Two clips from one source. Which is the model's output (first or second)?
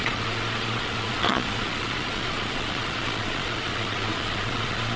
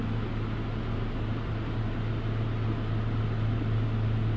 first